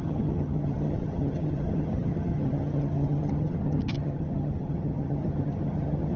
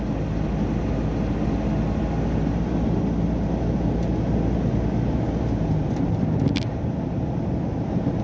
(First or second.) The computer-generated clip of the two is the first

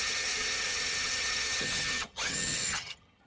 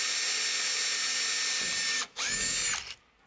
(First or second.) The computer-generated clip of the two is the first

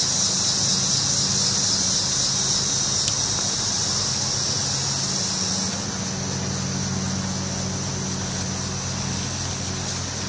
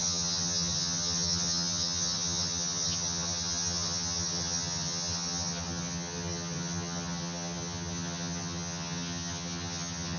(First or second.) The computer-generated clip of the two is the second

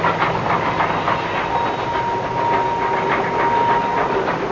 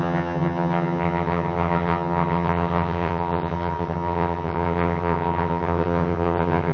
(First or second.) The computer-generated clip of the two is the second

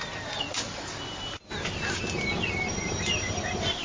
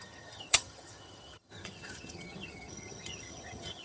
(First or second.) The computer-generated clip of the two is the second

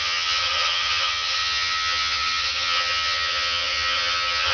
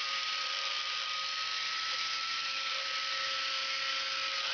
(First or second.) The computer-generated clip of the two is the first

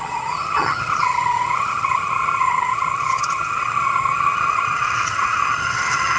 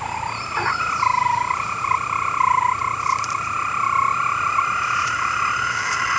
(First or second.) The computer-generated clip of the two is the first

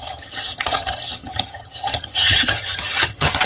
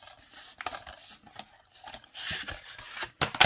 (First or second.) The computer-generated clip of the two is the first